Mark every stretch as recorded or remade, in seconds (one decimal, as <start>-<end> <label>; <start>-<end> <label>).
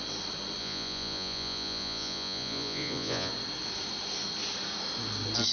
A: 0.0-0.6 recorded; 0.6-3.3 remade; 3.3-5.5 recorded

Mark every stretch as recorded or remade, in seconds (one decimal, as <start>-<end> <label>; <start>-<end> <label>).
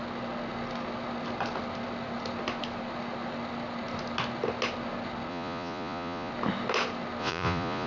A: 0.0-5.3 recorded; 5.3-6.3 remade; 6.3-7.2 recorded; 7.2-7.9 remade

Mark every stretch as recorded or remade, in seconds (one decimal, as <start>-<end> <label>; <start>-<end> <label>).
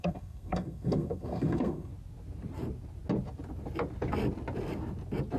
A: 0.0-1.9 remade; 1.9-5.4 recorded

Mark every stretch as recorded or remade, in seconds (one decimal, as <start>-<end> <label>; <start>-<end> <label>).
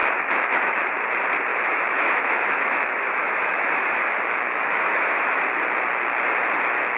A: 0.0-0.9 remade; 0.9-1.5 recorded; 1.5-5.4 remade; 5.4-7.0 recorded